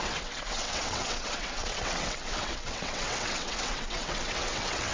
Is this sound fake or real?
fake